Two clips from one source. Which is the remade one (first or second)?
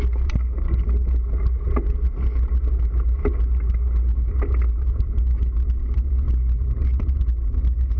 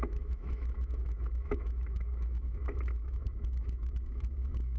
second